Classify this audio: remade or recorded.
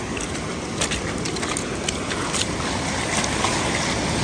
recorded